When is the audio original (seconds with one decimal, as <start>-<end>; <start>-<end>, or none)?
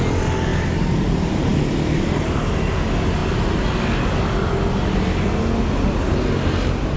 0.0-7.0